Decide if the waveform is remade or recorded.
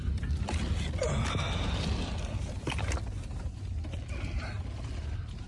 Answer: recorded